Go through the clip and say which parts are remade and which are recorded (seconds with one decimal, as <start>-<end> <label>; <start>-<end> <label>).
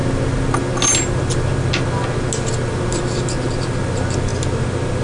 0.0-5.0 recorded